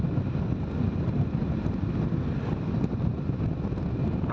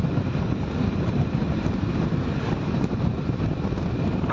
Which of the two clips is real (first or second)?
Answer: first